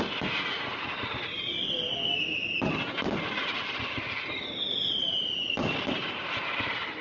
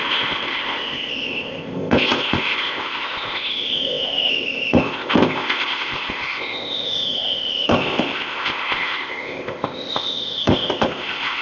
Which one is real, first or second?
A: first